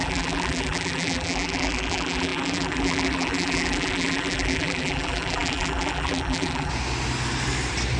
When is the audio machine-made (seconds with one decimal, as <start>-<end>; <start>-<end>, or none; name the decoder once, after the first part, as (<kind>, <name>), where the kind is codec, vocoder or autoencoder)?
0.0-6.7 (vocoder, BigVGAN v2)